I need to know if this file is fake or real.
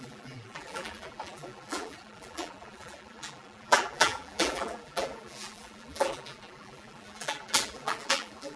fake